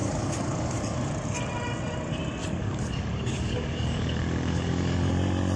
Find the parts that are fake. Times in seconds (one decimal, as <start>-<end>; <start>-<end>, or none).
0.0-1.1; 2.4-5.1

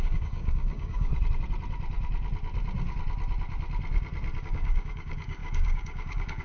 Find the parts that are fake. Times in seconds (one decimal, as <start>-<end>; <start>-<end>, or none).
0.0-1.1; 4.4-6.4

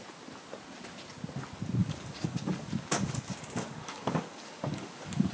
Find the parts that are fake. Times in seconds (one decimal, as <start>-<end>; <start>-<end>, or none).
1.8-5.3

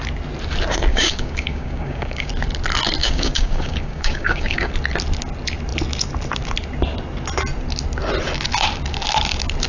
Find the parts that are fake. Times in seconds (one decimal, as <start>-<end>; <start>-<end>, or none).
0.9-2.3; 3.0-4.7

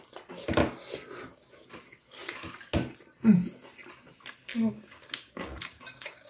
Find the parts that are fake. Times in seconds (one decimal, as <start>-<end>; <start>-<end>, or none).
4.5-6.3